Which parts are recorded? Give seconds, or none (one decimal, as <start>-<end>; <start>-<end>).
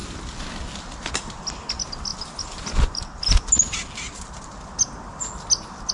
0.0-5.9